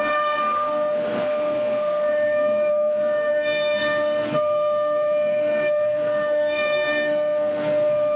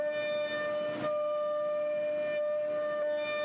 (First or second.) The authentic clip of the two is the second